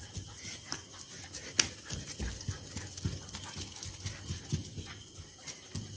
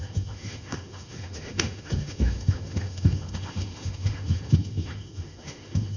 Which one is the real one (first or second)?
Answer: first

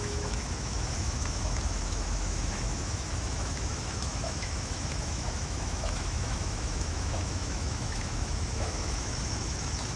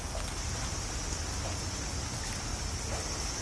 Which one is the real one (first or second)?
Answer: second